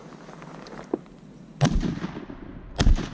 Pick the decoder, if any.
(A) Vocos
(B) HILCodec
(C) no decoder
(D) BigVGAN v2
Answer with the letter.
C